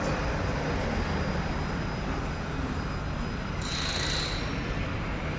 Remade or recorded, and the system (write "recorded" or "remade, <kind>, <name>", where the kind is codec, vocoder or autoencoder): recorded